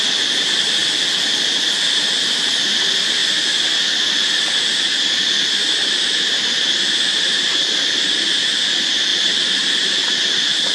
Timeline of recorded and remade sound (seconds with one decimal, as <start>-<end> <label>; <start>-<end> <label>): 0.0-10.7 recorded